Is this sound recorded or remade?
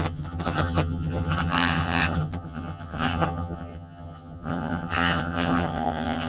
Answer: remade